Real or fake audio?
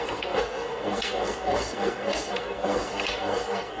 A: fake